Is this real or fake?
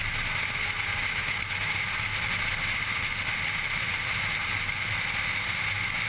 real